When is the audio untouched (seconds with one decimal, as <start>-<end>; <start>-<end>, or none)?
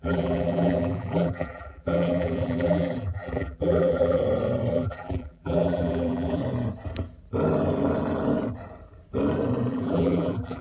4.2-4.7; 6.4-9.7